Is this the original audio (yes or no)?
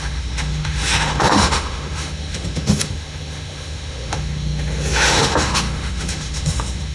no